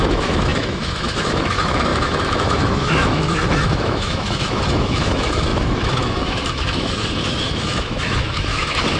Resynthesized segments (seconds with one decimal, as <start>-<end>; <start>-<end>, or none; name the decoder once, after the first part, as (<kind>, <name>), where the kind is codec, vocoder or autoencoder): 0.0-9.0 (autoencoder, DAC-VAE)